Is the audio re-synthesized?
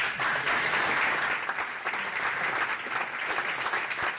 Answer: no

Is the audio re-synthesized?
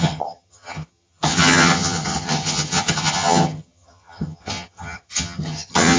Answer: yes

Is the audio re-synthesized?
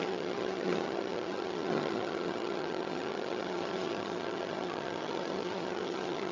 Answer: yes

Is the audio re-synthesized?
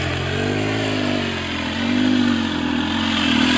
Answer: no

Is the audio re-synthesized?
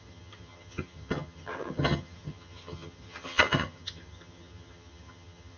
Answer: yes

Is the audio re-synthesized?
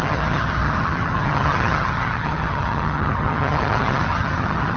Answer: yes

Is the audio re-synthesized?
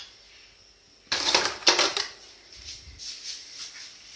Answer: no